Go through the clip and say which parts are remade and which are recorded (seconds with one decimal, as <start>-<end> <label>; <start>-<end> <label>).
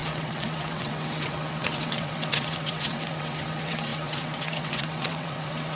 0.0-5.8 remade